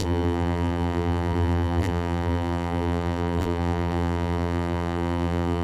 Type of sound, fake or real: fake